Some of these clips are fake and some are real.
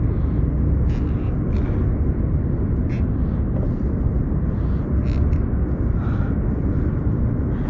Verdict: real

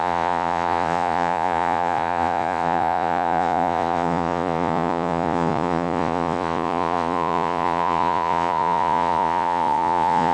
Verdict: fake